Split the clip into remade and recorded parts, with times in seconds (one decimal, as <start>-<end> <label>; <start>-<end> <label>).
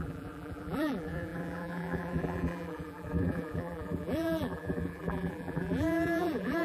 0.0-6.6 remade